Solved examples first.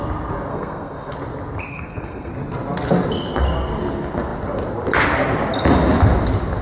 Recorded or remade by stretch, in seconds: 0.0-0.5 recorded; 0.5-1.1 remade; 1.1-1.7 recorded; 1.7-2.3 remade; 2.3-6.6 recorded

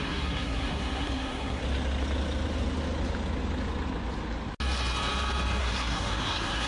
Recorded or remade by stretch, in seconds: 0.0-1.6 remade; 1.6-5.6 recorded; 5.6-6.7 remade

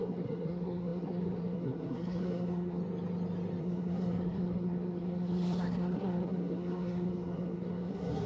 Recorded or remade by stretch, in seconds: 0.0-2.8 remade; 2.8-3.6 recorded; 3.6-8.3 remade

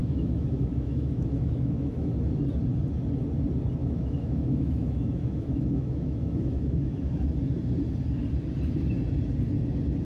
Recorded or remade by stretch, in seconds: 0.0-2.1 remade; 2.1-3.8 recorded; 3.8-7.1 remade; 7.1-10.0 recorded

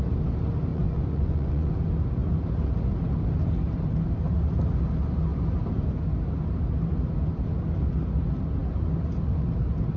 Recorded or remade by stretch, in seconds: 0.0-0.7 recorded; 0.7-1.7 remade; 1.7-10.0 recorded

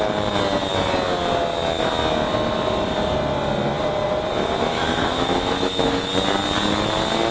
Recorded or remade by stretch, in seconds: 0.0-4.7 recorded; 4.7-6.1 remade; 6.1-7.3 recorded